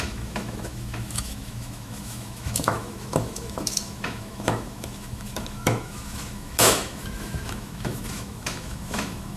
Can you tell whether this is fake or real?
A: fake